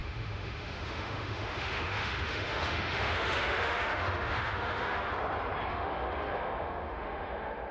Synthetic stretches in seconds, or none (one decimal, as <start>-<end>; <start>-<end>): 0.0-5.1; 5.7-7.7